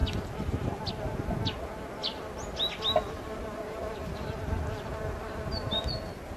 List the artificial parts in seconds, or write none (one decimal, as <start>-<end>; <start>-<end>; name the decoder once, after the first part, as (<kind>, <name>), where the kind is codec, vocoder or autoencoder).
none